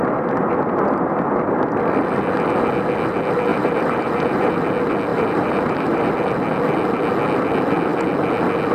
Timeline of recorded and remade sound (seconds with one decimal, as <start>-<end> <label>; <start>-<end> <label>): 0.0-3.5 recorded; 3.5-4.6 remade; 4.6-5.1 recorded; 5.1-6.1 remade; 6.1-8.7 recorded